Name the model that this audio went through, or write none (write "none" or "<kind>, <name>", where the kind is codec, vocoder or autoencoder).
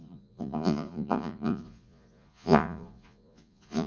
vocoder, Vocos